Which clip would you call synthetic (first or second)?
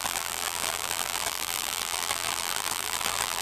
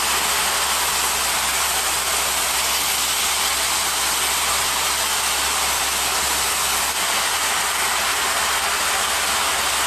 first